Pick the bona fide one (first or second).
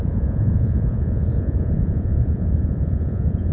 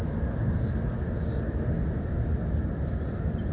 second